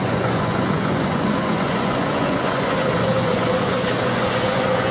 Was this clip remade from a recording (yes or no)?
yes